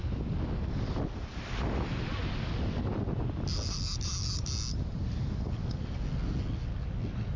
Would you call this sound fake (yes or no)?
no